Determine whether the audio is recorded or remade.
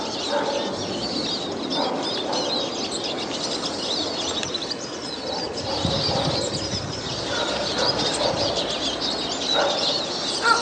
recorded